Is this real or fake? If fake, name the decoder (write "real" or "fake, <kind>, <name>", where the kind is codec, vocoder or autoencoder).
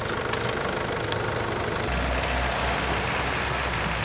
real